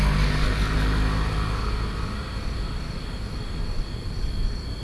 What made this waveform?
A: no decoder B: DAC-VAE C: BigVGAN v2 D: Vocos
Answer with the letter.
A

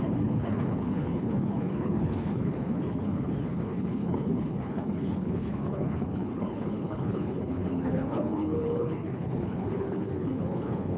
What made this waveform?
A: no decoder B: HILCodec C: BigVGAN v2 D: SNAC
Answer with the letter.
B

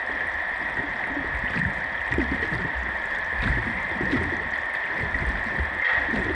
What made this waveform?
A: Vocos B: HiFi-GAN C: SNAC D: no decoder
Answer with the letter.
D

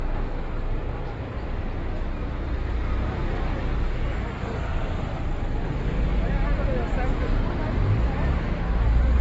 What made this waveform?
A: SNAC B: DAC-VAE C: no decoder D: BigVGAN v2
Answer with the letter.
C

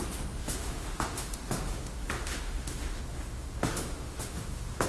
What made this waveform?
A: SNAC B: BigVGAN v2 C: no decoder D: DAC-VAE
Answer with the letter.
D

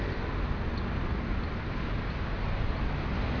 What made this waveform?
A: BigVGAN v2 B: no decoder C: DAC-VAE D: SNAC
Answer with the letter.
B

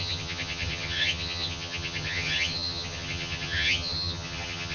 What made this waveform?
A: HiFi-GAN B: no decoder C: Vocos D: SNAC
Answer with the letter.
A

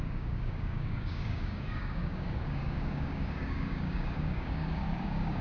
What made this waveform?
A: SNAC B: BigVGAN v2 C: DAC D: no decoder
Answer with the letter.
C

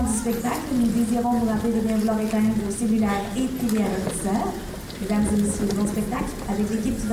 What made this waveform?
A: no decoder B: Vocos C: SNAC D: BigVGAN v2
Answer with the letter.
A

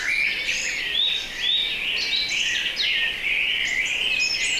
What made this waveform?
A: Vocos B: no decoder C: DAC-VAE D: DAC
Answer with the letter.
B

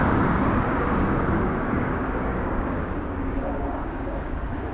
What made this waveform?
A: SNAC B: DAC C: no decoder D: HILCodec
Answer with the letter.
B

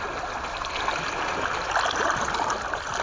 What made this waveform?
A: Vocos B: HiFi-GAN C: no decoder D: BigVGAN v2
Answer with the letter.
C